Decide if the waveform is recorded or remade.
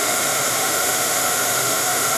remade